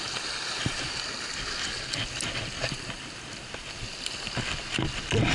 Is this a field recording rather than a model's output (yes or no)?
yes